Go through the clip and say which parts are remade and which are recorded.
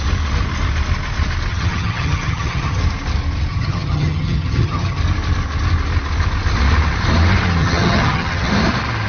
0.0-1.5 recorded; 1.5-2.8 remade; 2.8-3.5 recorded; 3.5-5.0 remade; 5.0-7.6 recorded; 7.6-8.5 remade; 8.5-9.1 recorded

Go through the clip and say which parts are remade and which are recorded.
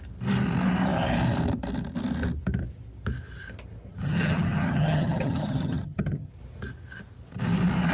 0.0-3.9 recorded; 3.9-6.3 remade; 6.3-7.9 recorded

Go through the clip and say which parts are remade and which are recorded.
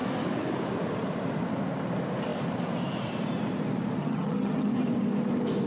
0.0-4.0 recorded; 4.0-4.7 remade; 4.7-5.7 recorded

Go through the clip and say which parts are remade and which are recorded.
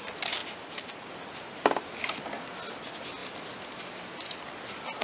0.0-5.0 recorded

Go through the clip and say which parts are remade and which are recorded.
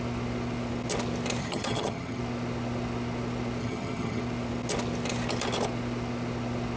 0.0-1.4 recorded; 1.4-2.2 remade; 2.2-3.6 recorded; 3.6-4.2 remade; 4.2-6.8 recorded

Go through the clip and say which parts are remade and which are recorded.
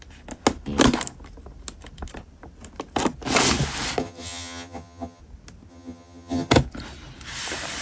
0.0-4.0 recorded; 4.0-5.2 remade; 5.2-5.7 recorded; 5.7-6.5 remade; 6.5-7.8 recorded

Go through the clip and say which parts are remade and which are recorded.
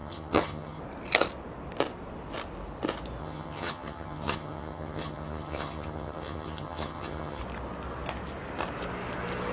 0.0-0.8 remade; 0.8-3.2 recorded; 3.2-7.4 remade; 7.4-9.5 recorded